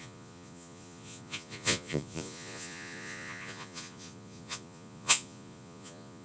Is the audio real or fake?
fake